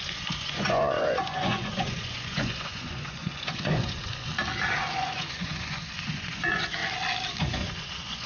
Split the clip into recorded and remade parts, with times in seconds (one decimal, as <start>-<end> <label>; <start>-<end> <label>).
0.0-4.3 remade; 4.3-4.9 recorded; 4.9-6.8 remade; 6.8-7.4 recorded; 7.4-8.3 remade